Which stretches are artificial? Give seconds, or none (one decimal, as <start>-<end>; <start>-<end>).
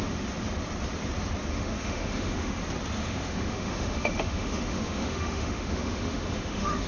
1.5-2.6; 3.0-6.9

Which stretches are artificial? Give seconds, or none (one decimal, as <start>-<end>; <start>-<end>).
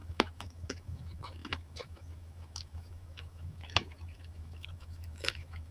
0.0-5.7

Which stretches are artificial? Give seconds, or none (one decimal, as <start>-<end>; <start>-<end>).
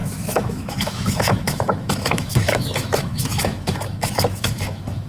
0.0-5.1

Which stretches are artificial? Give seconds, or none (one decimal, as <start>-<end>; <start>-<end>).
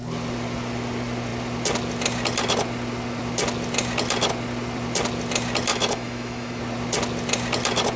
5.7-6.6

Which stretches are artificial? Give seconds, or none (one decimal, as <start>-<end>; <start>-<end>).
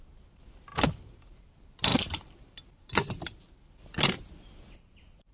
none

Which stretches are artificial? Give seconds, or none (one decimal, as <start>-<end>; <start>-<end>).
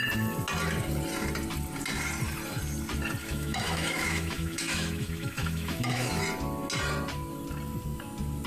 3.2-6.2